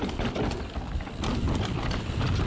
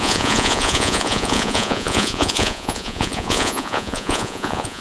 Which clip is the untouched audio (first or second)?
first